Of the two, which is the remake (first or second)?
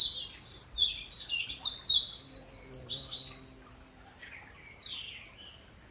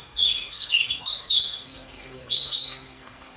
second